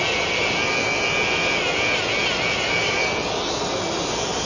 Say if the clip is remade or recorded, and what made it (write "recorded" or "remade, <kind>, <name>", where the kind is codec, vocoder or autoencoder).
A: recorded